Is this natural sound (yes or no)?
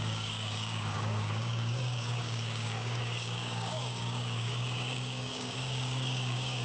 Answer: no